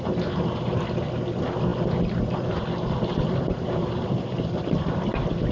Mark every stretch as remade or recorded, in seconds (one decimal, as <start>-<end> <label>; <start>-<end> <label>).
0.0-1.7 recorded; 1.7-5.0 remade; 5.0-5.5 recorded